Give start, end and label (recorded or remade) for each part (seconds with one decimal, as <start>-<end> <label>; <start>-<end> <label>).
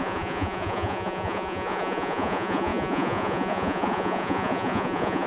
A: 0.0-5.3 remade